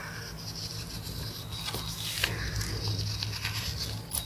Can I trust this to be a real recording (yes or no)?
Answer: yes